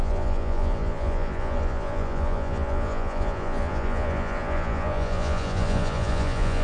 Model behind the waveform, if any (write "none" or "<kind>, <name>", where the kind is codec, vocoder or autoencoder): vocoder, Vocos